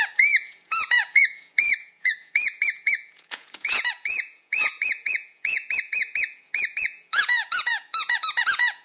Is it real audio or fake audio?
fake